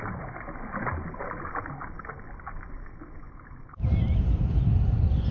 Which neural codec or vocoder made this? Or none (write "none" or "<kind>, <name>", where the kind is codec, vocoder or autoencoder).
none